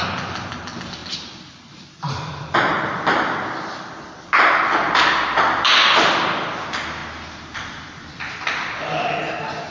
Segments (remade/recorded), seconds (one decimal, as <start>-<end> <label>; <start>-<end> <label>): 0.0-9.7 recorded